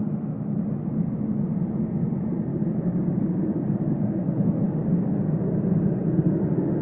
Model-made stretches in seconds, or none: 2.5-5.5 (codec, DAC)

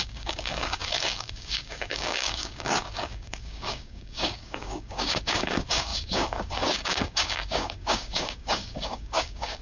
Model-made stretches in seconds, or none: 0.0-9.6 (codec, DAC)